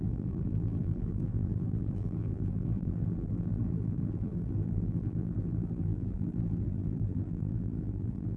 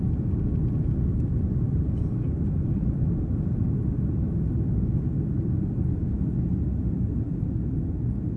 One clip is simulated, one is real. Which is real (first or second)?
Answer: second